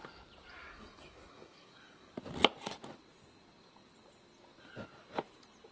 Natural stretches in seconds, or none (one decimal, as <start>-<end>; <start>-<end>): 0.0-0.6; 2.1-5.7